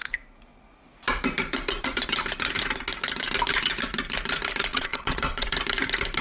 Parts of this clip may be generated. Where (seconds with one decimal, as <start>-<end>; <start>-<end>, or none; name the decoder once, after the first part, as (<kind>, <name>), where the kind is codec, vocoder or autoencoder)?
4.7-5.5 (vocoder, WaveNeXt)